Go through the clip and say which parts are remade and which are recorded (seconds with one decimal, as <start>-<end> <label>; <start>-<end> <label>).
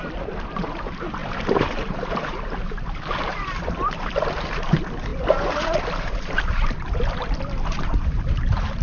0.0-8.8 remade